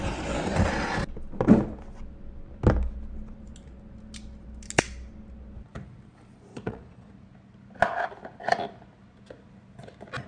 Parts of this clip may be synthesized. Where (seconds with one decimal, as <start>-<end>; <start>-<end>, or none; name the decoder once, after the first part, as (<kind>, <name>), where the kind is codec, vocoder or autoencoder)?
6.5-7.1 (vocoder, Vocos)